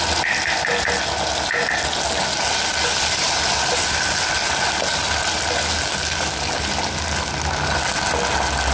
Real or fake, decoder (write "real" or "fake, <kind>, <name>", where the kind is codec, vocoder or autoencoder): real